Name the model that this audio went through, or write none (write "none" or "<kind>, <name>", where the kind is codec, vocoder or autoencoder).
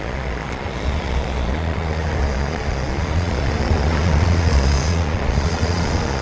vocoder, Vocos